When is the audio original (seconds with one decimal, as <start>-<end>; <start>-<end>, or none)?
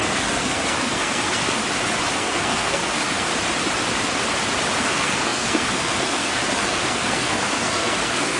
1.6-2.1; 3.3-4.8